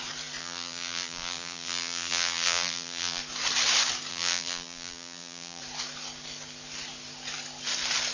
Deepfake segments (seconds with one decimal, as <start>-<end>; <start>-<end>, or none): 0.4-3.2; 4.1-5.6